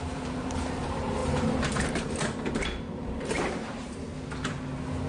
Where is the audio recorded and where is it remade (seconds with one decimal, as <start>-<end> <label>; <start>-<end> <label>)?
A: 0.0-4.1 remade; 4.1-5.1 recorded